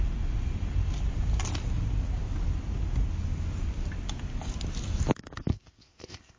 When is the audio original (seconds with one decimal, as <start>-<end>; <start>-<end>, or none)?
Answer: 0.0-5.5